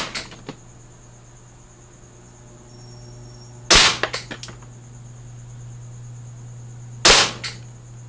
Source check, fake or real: real